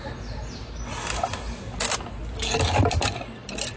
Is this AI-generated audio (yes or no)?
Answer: no